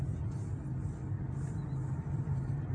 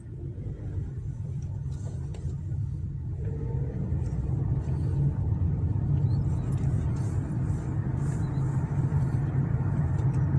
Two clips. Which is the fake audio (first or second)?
second